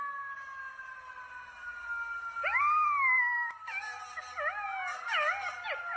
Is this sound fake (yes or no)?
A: no